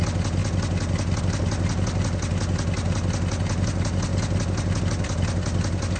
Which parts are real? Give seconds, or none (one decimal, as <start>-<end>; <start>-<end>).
0.0-6.0